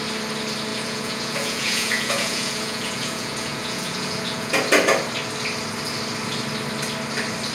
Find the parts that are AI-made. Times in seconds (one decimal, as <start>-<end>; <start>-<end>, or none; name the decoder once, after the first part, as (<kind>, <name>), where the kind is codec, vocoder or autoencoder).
0.7-4.5 (vocoder, Vocos)